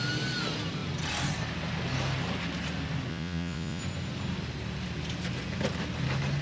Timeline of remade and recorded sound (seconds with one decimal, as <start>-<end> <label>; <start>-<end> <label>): 0.0-3.1 recorded; 3.1-3.8 remade; 3.8-6.4 recorded